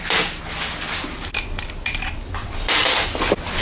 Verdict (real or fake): real